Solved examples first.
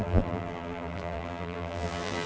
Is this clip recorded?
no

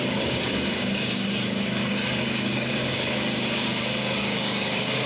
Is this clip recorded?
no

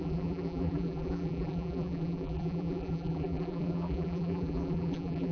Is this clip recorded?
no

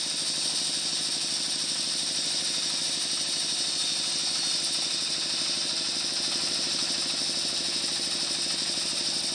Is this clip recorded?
yes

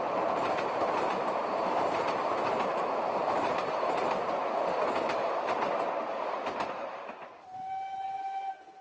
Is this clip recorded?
yes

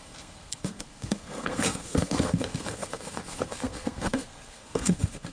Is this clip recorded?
no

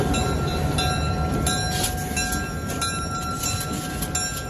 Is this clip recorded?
yes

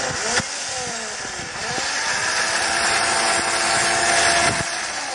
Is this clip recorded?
yes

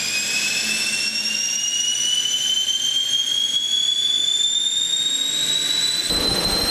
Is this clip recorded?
yes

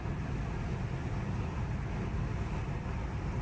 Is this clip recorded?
yes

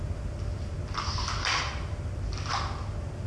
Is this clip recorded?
yes